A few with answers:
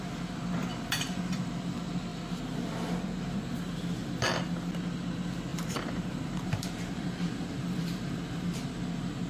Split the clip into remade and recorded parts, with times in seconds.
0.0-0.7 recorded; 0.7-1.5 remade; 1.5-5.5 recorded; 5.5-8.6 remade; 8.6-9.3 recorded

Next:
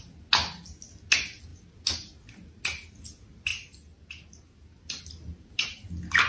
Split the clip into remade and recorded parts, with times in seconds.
0.0-6.3 recorded

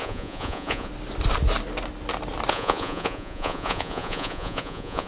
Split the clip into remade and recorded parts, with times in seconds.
0.0-0.9 remade; 0.9-2.5 recorded; 2.5-5.1 remade

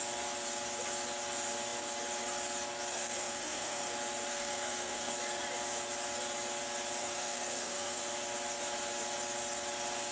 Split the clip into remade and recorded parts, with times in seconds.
0.0-2.9 recorded; 2.9-3.9 remade; 3.9-4.3 recorded; 4.3-5.1 remade; 5.1-7.0 recorded; 7.0-8.0 remade; 8.0-10.1 recorded

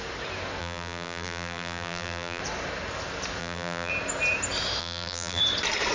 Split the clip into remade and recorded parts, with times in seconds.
0.0-0.6 recorded; 0.6-2.4 remade; 2.4-3.4 recorded; 3.4-3.9 remade; 3.9-4.8 recorded; 4.8-5.4 remade; 5.4-5.9 recorded